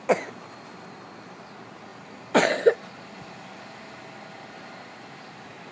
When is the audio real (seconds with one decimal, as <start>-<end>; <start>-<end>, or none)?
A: 0.0-5.7